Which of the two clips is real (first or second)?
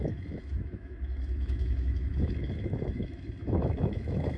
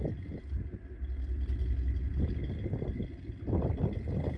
second